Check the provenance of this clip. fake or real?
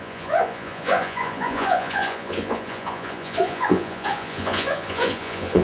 fake